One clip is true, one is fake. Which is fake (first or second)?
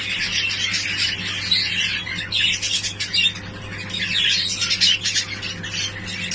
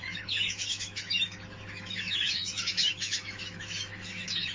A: second